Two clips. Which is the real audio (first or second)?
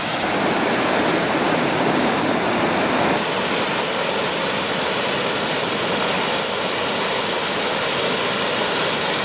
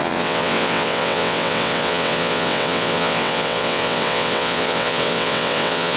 first